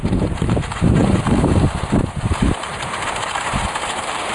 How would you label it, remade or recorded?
remade